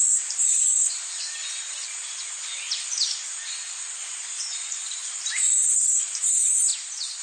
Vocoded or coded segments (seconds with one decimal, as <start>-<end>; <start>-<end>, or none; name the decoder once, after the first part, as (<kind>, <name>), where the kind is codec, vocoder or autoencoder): 0.0-2.1 (vocoder, BigVGAN v2); 3.9-7.2